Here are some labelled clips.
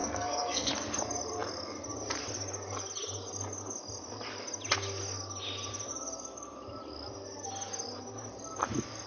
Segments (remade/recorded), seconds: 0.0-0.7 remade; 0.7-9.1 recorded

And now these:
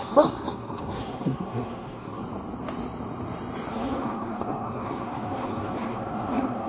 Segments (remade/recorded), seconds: 0.0-2.2 remade; 2.2-3.7 recorded; 3.7-6.7 remade

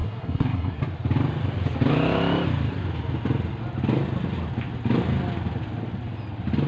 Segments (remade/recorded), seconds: 0.0-0.8 remade; 0.8-6.7 recorded

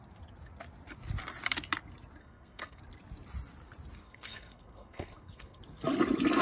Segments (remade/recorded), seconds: 0.0-2.2 recorded; 2.2-2.8 remade; 2.8-4.0 recorded; 4.0-5.6 remade; 5.6-6.4 recorded

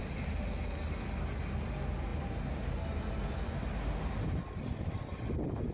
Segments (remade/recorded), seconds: 0.0-5.7 recorded

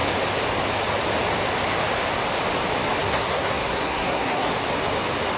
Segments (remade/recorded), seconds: 0.0-3.0 recorded; 3.0-4.5 remade; 4.5-5.4 recorded